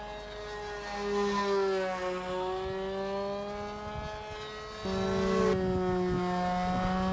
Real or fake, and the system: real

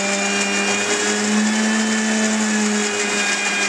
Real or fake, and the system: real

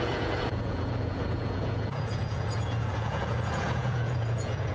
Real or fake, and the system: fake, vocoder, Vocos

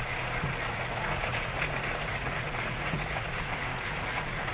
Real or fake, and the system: fake, vocoder, Vocos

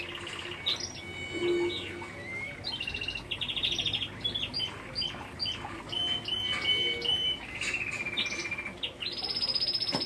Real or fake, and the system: real